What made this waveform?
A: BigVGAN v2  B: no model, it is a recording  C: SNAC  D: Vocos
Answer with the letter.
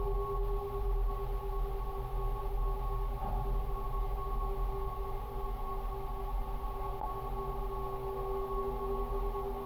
B